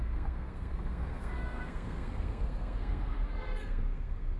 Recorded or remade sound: remade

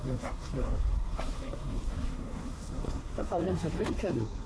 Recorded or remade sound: remade